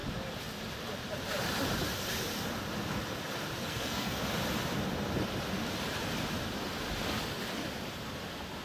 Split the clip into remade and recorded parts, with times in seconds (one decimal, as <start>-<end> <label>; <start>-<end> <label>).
0.0-3.6 recorded; 3.6-4.2 remade; 4.2-8.6 recorded